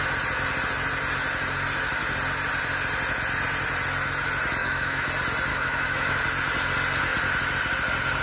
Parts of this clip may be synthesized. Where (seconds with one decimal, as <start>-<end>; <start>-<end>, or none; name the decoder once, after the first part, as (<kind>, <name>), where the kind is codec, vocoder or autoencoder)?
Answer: 4.6-5.1 (autoencoder, DAC-VAE); 5.5-6.2